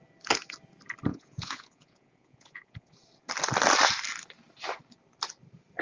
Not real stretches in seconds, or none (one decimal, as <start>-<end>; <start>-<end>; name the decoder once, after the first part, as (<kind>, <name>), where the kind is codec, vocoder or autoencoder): 1.1-2.9 (vocoder, Vocos)